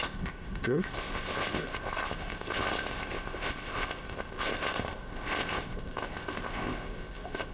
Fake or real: fake